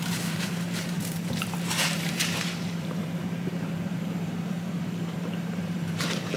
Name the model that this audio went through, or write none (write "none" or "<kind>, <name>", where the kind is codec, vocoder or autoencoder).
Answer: vocoder, BigVGAN v2